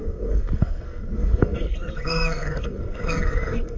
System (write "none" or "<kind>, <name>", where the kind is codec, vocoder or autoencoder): codec, SNAC